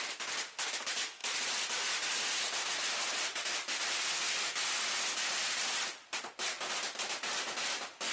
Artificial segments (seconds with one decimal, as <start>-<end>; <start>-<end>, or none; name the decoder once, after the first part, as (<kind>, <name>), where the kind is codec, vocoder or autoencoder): none